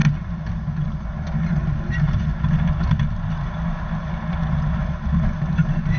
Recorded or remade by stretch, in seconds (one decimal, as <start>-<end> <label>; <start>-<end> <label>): 0.0-6.0 recorded